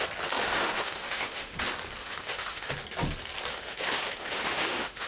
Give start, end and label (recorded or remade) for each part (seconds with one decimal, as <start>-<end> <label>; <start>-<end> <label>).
0.0-0.4 recorded; 0.4-1.6 remade; 1.6-2.0 recorded; 2.0-2.7 remade; 2.7-3.5 recorded; 3.5-5.1 remade